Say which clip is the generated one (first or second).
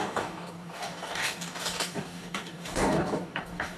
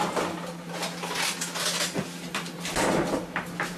first